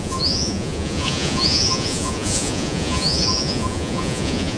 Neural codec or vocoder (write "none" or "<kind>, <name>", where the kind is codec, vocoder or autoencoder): vocoder, Vocos